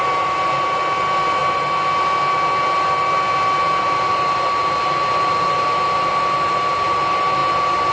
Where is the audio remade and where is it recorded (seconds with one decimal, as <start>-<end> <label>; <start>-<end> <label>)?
0.0-7.9 recorded